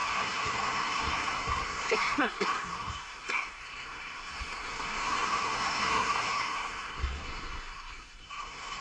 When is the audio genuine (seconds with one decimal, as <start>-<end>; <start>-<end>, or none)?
none